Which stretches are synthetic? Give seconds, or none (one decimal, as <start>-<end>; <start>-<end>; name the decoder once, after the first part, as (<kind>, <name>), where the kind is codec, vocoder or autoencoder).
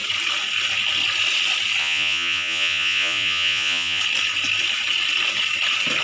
1.8-4.0 (vocoder, Vocos)